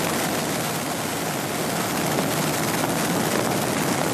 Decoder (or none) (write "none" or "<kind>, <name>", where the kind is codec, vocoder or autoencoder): none